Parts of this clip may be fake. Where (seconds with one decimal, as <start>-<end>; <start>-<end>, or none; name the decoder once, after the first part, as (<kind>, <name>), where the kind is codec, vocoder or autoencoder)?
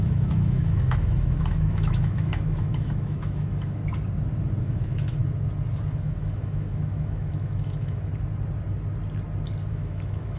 0.0-3.8 (autoencoder, DAC-VAE); 4.6-5.2; 5.9-8.1; 9.7-10.4